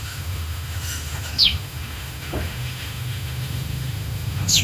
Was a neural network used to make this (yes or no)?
yes